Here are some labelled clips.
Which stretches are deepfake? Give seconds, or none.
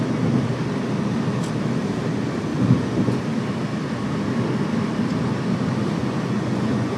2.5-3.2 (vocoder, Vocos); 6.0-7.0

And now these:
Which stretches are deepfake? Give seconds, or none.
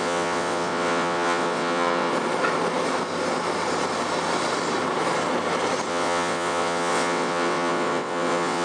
0.0-2.1 (vocoder, WaveNeXt); 5.9-8.6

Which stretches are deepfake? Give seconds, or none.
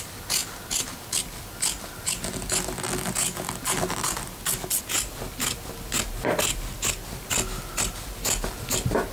none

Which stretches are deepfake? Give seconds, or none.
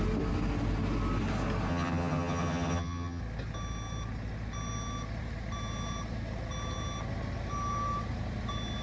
1.7-3.2 (vocoder, HiFi-GAN)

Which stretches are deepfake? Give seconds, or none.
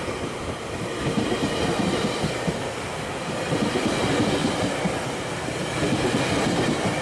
0.0-4.4 (vocoder, BigVGAN v2)